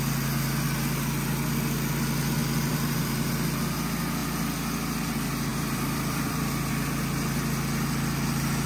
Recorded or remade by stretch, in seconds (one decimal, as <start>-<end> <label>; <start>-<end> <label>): 0.0-2.4 recorded; 2.4-3.3 remade; 3.3-5.5 recorded; 5.5-6.7 remade; 6.7-8.7 recorded